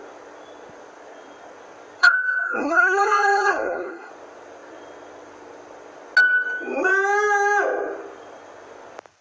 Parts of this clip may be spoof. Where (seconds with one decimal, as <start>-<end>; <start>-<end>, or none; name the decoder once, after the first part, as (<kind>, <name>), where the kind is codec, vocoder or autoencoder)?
2.0-4.1 (codec, SNAC)